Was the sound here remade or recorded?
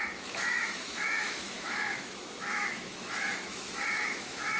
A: remade